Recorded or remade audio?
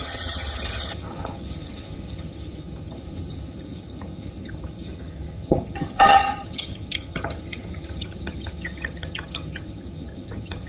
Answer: remade